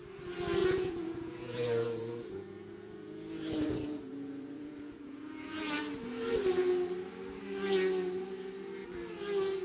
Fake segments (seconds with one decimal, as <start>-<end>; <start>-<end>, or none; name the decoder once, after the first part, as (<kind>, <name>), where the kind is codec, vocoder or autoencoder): 0.6-5.8 (vocoder, Vocos)